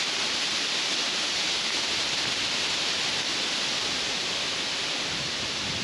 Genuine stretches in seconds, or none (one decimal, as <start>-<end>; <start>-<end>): 3.5-5.8